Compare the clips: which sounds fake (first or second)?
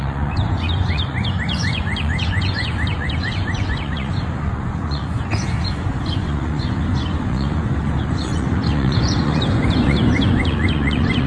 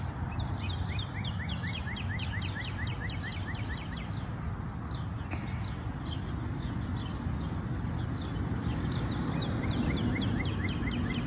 first